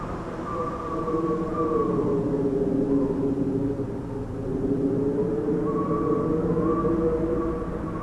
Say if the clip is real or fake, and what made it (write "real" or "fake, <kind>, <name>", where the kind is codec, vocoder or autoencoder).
real